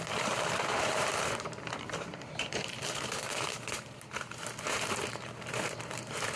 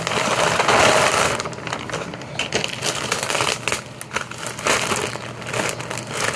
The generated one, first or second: first